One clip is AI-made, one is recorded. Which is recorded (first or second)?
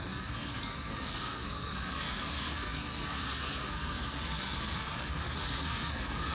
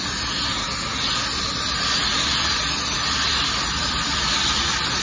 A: second